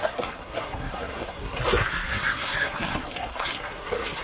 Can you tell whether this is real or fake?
fake